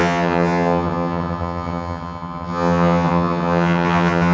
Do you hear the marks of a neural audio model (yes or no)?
yes